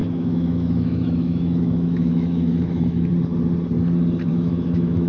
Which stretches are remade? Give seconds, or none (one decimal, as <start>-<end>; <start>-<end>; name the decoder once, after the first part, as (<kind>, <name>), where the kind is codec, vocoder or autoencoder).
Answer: 0.0-3.1 (autoencoder, DAC-VAE); 4.3-5.1